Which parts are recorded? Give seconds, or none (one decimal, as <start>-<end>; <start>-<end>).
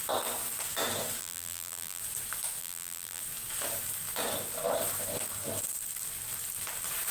0.0-1.2; 2.0-2.6; 3.2-7.1